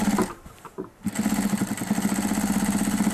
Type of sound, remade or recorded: recorded